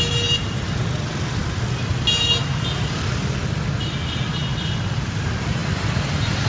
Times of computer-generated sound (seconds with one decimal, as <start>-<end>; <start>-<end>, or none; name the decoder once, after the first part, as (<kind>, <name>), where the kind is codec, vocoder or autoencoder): none